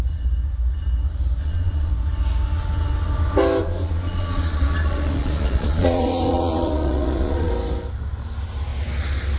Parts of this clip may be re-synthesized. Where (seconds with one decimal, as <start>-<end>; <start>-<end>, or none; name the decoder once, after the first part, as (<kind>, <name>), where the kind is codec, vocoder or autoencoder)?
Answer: 1.4-1.9 (vocoder, Vocos); 3.6-7.5